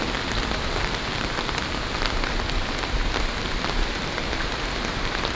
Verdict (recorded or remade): remade